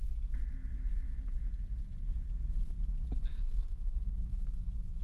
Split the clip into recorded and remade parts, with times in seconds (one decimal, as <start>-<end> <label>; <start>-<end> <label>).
0.0-3.3 recorded; 3.3-4.4 remade; 4.4-5.0 recorded